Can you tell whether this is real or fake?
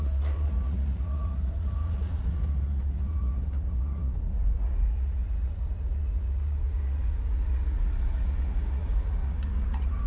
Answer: fake